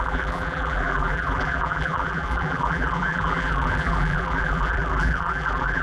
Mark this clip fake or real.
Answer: fake